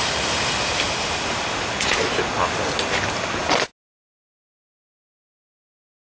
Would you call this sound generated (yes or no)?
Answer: no